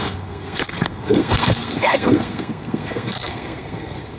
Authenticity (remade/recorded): remade